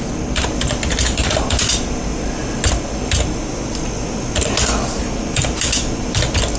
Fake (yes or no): no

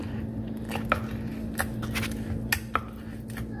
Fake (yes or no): no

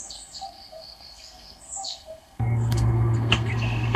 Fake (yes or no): yes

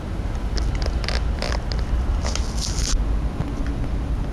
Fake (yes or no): no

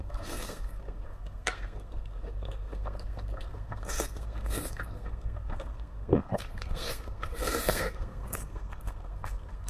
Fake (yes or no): yes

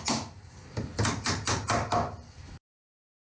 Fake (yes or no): no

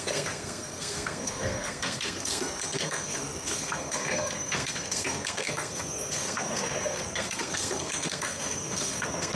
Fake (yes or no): yes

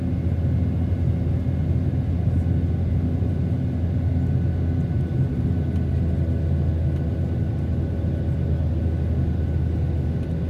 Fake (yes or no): no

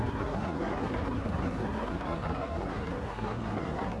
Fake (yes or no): yes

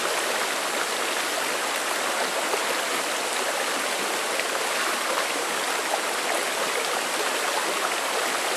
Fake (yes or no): no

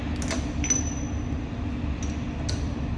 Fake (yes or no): no